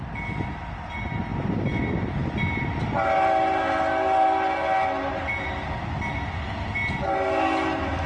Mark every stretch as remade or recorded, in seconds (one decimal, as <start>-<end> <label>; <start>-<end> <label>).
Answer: 0.0-8.1 recorded